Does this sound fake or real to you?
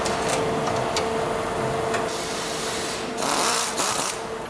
real